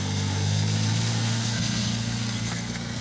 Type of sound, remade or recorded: remade